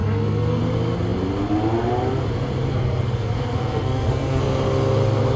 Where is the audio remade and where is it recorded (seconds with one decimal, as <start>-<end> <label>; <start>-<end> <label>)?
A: 0.0-0.6 remade; 0.6-2.7 recorded; 2.7-4.4 remade; 4.4-5.4 recorded